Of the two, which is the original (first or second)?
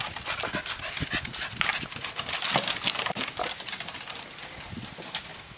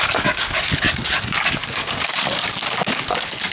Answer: first